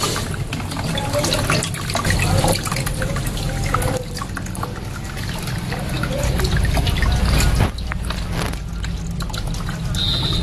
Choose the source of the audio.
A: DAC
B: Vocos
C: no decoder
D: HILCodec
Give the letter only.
C